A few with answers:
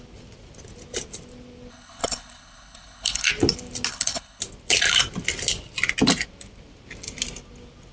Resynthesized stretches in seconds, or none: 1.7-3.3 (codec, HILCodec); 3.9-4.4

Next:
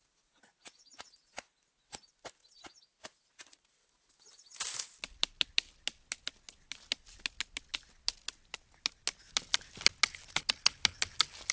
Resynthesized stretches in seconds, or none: none

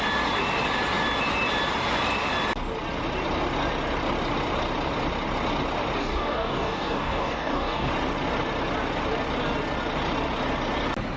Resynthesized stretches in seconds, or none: 6.0-7.9 (codec, DAC)

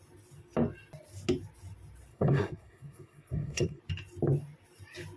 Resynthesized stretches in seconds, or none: 2.1-3.8 (codec, SNAC)

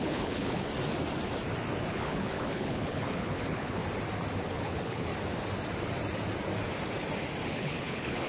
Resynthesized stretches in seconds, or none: 0.0-0.7 (codec, HILCodec); 1.9-3.8; 4.5-5.1; 7.5-8.3

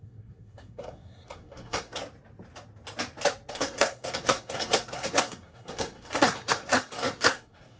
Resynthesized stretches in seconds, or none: 0.0-2.0 (codec, SNAC); 3.5-7.8

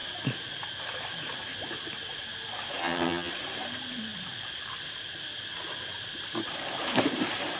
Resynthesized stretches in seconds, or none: 2.8-3.3 (vocoder, HiFi-GAN)

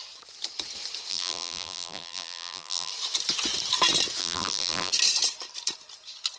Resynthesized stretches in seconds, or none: 1.1-2.9 (vocoder, BigVGAN v2); 4.2-4.9